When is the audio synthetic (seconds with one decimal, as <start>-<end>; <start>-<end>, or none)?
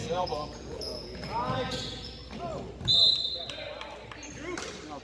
0.0-2.1